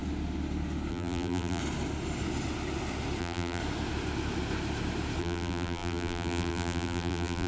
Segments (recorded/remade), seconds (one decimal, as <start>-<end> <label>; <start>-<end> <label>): 0.0-0.9 recorded; 0.9-1.6 remade; 1.6-3.2 recorded; 3.2-3.6 remade; 3.6-5.2 recorded; 5.2-7.5 remade